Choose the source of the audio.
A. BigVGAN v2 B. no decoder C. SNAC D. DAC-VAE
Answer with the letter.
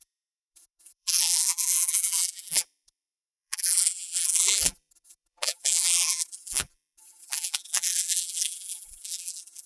A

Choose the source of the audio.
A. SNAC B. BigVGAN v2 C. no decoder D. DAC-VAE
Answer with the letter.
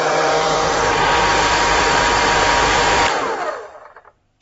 B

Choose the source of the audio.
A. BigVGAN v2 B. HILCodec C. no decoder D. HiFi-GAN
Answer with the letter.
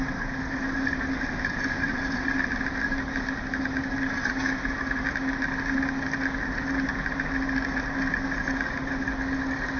C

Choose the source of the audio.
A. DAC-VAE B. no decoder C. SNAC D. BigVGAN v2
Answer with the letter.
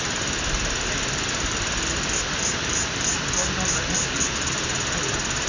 B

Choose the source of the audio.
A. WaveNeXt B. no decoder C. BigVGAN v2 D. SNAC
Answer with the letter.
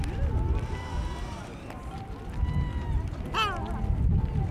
B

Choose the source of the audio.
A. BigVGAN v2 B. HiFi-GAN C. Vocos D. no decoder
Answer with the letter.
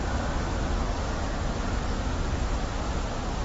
D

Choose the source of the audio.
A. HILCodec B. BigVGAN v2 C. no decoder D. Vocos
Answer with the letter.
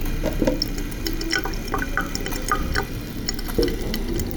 C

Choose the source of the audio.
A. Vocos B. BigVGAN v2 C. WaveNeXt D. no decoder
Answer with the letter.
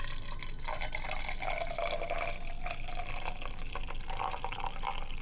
D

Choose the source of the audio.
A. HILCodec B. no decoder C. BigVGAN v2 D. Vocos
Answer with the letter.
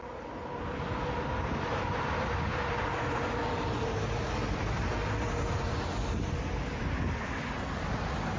B